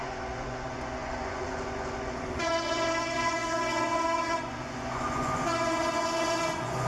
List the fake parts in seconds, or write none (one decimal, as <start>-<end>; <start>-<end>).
0.0-6.9